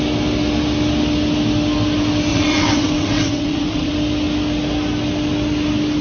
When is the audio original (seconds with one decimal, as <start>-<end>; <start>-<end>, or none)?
0.0-2.3; 3.9-6.0